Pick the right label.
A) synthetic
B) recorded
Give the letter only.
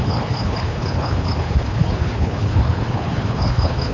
A